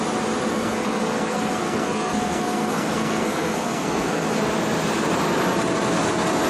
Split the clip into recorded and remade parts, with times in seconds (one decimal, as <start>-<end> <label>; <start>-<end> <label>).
0.0-0.5 recorded; 0.5-4.4 remade; 4.4-6.5 recorded